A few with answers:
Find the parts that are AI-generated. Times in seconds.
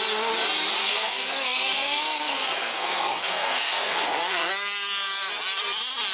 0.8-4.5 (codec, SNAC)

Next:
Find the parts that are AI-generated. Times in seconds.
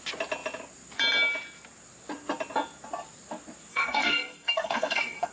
3.7-5.3 (codec, SNAC)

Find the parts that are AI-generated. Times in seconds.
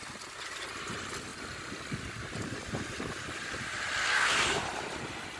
4.0-4.6 (codec, SNAC)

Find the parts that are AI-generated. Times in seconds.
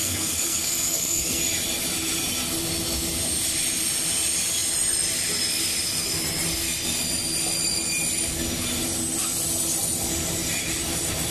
0.0-1.4 (codec, SNAC)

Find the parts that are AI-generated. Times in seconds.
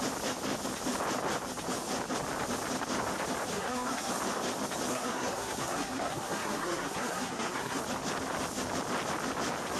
3.5-4.1 (codec, SNAC); 4.9-7.8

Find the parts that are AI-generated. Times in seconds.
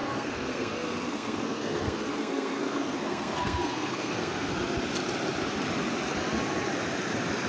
0.0-4.5 (codec, SNAC)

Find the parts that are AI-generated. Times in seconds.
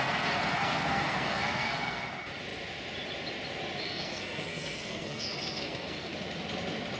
0.0-2.1 (codec, SNAC); 3.8-6.1